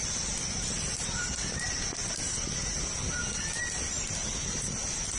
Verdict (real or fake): real